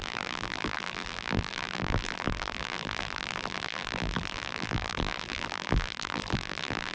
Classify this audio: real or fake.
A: fake